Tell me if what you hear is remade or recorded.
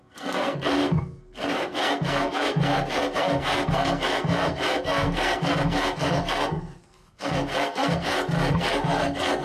remade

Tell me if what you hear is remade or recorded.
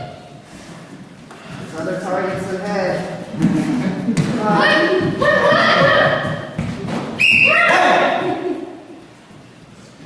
recorded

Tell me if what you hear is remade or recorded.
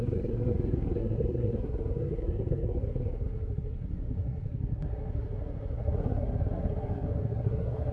remade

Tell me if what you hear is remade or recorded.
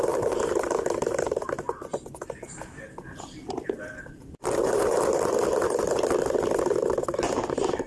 recorded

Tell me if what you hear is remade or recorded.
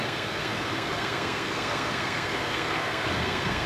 remade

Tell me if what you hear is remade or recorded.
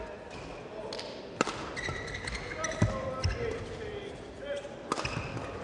recorded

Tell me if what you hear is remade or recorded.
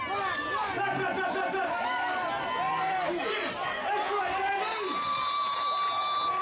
recorded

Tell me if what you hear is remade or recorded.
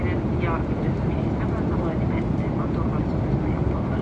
recorded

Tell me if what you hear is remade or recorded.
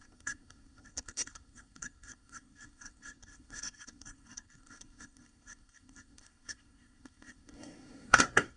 remade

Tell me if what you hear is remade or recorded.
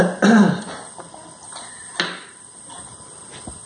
recorded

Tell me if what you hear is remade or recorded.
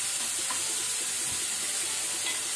recorded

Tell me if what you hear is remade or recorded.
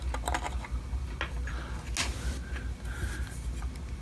recorded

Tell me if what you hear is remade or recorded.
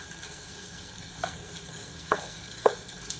remade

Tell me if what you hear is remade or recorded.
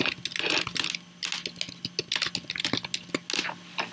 recorded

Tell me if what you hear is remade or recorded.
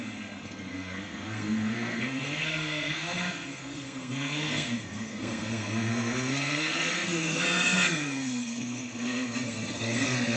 remade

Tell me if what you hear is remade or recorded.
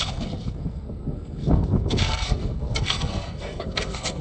remade